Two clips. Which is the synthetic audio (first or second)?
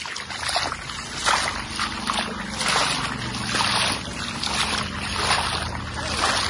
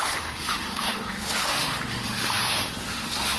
second